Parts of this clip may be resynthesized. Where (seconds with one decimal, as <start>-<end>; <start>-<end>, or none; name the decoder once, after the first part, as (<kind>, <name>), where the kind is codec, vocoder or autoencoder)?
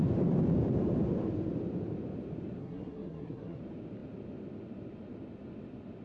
2.6-3.6 (codec, SNAC)